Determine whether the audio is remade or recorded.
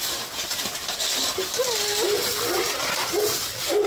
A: recorded